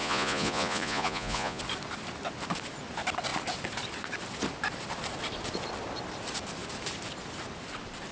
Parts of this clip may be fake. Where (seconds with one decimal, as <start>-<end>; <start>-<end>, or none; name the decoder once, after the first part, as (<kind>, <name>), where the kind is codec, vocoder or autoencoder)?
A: 0.0-1.6 (vocoder, Vocos)